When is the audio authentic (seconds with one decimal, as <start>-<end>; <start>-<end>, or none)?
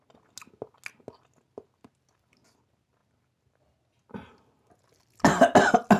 0.0-6.0